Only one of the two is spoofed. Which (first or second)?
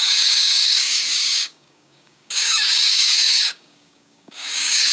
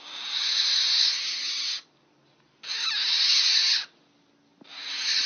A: first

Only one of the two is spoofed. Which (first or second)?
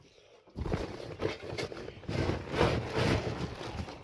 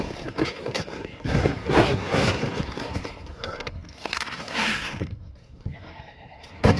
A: second